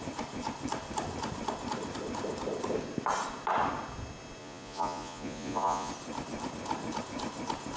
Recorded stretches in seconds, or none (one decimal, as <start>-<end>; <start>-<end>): 0.0-4.4; 5.9-7.8